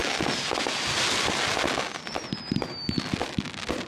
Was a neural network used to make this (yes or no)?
no